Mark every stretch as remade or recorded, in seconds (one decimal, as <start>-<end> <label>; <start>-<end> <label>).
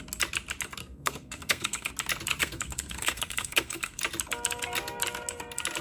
0.0-0.8 recorded; 0.8-1.9 remade; 1.9-2.4 recorded; 2.4-4.0 remade; 4.0-5.8 recorded